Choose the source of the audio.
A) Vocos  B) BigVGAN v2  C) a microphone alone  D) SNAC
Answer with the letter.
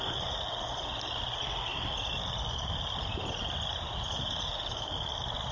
C